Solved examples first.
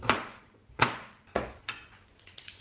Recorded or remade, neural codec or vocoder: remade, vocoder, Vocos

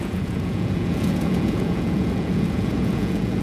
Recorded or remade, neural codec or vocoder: remade, vocoder, Vocos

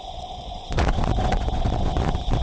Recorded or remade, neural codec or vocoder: remade, vocoder, Vocos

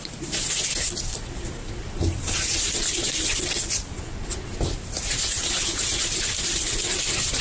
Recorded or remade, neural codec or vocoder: recorded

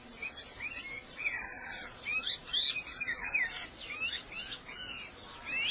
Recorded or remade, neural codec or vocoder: recorded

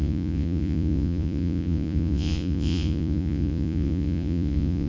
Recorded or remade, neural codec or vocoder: remade, vocoder, Vocos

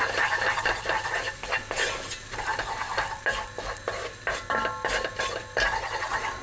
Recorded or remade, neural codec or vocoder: recorded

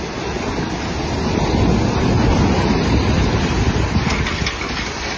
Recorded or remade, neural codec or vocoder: recorded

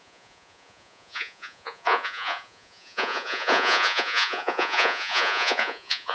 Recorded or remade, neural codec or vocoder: remade, vocoder, Vocos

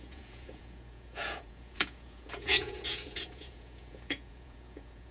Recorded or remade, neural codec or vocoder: remade, vocoder, Vocos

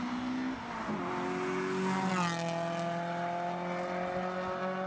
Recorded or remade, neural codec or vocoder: recorded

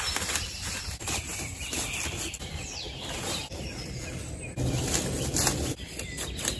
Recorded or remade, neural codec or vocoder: recorded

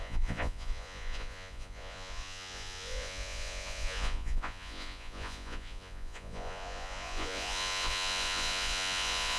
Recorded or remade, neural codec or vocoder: remade, vocoder, Vocos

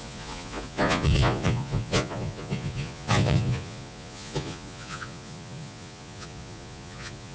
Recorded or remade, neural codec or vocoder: remade, vocoder, Vocos